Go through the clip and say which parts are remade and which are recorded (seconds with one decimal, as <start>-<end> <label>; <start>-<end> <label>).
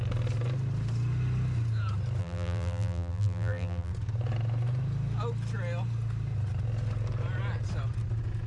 0.0-2.2 recorded; 2.2-3.9 remade; 3.9-8.5 recorded